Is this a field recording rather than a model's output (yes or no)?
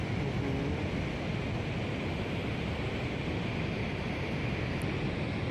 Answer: yes